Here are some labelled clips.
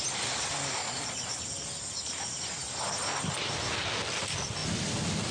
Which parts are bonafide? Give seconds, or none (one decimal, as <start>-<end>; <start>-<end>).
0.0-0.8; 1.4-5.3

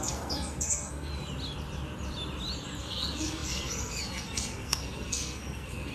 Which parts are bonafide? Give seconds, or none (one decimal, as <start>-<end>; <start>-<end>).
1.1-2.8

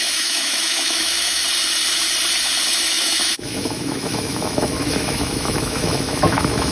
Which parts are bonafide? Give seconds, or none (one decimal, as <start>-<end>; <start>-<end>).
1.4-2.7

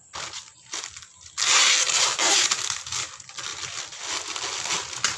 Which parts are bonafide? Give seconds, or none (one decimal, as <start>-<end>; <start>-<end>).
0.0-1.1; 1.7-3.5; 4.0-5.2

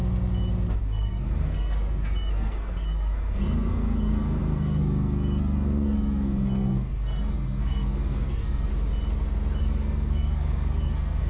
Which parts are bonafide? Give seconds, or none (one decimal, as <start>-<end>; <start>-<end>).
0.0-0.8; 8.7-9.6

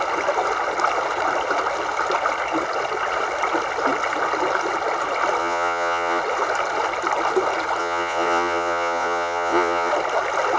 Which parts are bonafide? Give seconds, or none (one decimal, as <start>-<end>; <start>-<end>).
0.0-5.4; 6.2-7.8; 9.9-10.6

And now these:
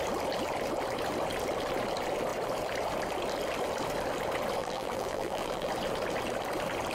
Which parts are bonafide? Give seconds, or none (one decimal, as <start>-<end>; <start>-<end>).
0.0-4.6; 5.7-6.9